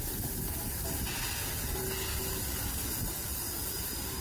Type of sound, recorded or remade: recorded